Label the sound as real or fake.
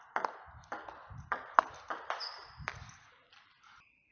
real